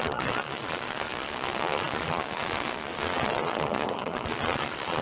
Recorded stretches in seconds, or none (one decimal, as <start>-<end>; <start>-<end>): none